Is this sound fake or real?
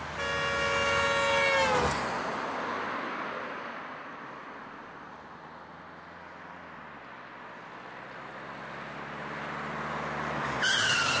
real